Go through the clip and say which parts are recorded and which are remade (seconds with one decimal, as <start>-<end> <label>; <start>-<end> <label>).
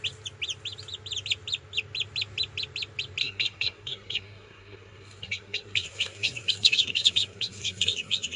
0.0-3.2 recorded; 3.2-8.4 remade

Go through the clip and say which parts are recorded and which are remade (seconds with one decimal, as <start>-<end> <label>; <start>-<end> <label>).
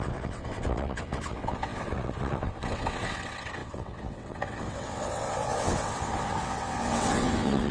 0.0-7.7 remade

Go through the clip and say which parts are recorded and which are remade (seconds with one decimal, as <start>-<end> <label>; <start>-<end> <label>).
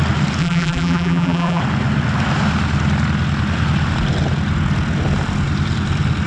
0.0-0.4 recorded; 0.4-1.6 remade; 1.6-6.3 recorded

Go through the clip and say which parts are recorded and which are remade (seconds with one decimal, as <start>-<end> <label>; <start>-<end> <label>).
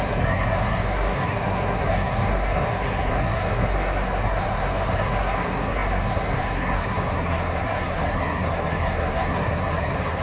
0.0-10.2 remade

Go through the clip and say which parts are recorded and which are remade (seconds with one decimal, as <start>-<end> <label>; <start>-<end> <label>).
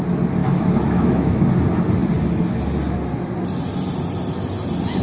0.0-0.4 recorded; 0.4-1.5 remade; 1.5-5.0 recorded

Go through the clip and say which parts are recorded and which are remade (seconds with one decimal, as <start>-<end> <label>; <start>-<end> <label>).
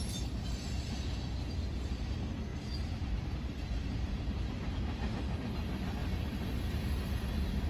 0.0-2.5 recorded; 2.5-4.7 remade; 4.7-7.7 recorded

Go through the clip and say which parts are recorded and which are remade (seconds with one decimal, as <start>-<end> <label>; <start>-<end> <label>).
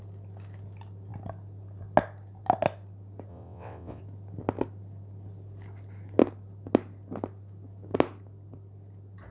0.0-3.3 recorded; 3.3-4.0 remade; 4.0-9.3 recorded